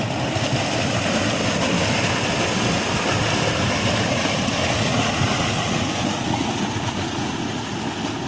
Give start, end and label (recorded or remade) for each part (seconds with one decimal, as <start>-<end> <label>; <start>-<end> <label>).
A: 0.0-4.9 recorded; 4.9-7.8 remade; 7.8-8.3 recorded